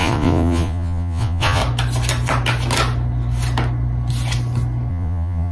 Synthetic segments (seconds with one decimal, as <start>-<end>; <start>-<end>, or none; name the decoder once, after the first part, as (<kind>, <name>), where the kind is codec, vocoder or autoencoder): 0.0-1.6 (vocoder, Vocos); 4.9-5.5

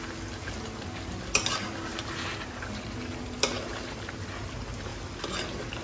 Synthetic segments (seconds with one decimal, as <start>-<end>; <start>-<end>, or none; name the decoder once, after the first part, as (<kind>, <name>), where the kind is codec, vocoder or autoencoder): none